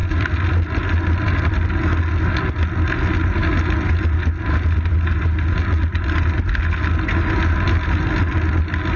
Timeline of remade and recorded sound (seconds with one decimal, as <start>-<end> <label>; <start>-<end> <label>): 0.0-9.0 recorded